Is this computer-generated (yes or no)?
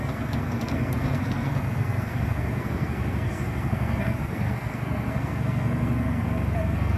yes